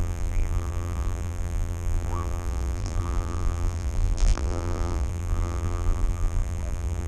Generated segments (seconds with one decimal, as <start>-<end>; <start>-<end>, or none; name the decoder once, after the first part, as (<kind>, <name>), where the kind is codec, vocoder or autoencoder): 0.0-7.1 (vocoder, BigVGAN v2)